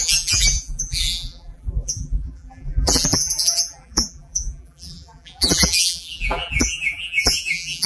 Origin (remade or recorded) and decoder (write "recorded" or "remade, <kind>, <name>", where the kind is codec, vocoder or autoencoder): remade, vocoder, BigVGAN v2